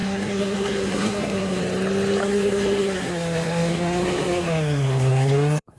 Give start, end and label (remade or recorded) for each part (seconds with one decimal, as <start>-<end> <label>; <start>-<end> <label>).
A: 0.0-1.6 remade; 1.6-2.2 recorded; 2.2-5.8 remade